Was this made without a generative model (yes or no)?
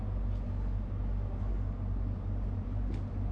yes